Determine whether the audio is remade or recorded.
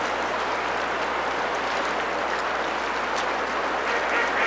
recorded